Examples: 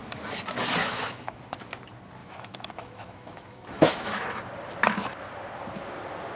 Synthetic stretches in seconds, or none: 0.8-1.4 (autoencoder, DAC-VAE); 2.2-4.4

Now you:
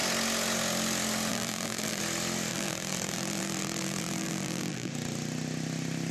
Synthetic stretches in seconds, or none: 1.3-2.0 (vocoder, BigVGAN v2); 2.5-4.9

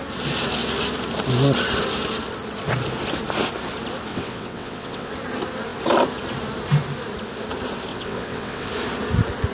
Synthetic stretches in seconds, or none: 4.1-5.1 (vocoder, WaveNeXt); 7.9-8.7

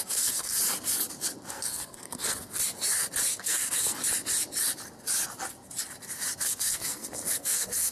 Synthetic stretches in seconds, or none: 0.0-0.5 (codec, SNAC); 1.5-2.6; 3.4-4.0; 6.4-7.9